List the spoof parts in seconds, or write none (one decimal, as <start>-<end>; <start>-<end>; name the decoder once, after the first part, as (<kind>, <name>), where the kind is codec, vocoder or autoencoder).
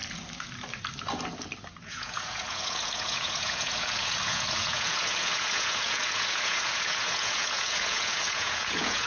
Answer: 1.7-9.1 (vocoder, Vocos)